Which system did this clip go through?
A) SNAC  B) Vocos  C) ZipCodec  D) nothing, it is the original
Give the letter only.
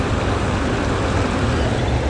D